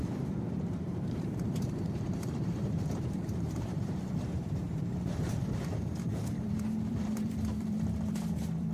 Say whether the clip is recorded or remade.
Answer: remade